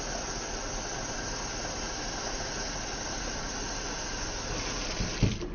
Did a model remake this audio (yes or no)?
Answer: no